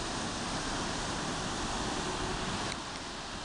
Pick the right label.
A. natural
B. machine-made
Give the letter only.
A